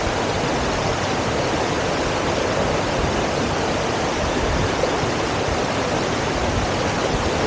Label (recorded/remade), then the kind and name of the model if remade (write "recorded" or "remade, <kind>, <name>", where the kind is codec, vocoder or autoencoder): recorded